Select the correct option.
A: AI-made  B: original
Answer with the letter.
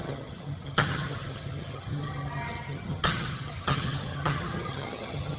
A